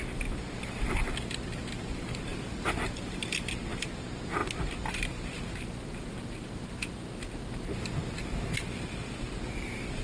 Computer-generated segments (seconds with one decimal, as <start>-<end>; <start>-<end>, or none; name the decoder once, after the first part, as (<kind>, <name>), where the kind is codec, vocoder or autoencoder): none